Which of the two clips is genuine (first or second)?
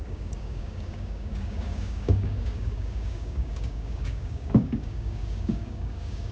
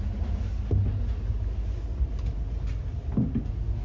second